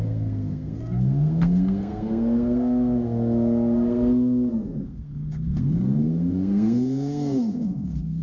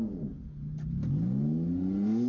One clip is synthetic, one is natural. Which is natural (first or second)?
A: second